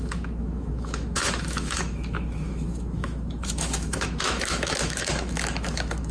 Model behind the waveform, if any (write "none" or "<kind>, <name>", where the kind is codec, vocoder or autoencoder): autoencoder, DAC-VAE